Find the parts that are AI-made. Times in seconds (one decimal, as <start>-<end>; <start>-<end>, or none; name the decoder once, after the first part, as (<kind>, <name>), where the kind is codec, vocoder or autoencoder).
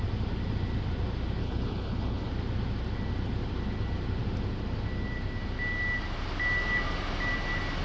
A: 1.4-2.3 (codec, HILCodec)